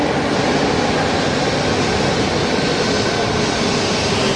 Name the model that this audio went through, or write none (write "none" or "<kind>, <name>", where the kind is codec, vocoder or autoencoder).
none